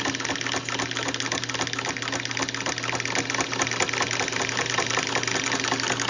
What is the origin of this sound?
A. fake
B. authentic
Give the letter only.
B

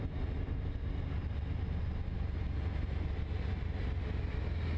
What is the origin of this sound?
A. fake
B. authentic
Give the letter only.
B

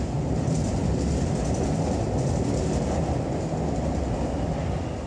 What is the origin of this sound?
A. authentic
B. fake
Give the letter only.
A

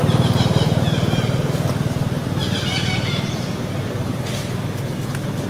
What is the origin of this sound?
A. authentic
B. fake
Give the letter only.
A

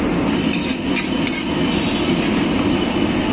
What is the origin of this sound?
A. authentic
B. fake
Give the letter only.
A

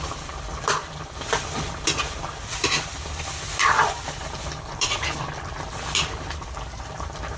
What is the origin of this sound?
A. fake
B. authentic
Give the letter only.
A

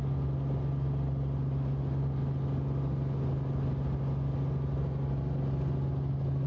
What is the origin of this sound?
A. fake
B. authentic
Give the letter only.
B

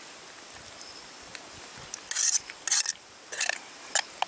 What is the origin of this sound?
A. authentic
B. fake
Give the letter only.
A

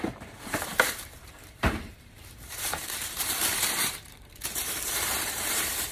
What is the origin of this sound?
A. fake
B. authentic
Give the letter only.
A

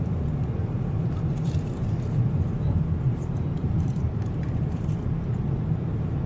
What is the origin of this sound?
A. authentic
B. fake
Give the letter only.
B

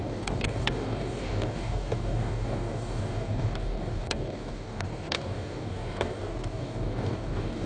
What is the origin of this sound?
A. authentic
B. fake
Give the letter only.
B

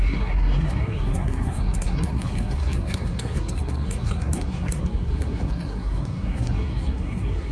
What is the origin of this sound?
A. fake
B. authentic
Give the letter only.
A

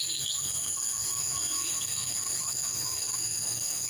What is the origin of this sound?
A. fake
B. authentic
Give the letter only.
A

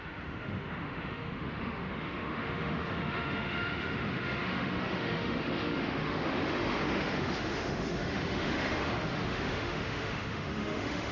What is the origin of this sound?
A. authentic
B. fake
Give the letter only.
B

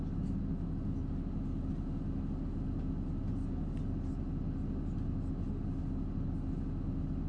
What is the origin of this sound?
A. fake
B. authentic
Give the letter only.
B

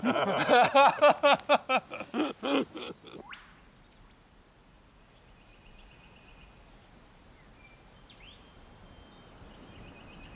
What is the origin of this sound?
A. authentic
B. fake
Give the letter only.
A